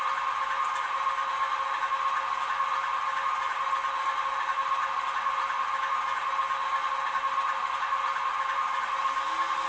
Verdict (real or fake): real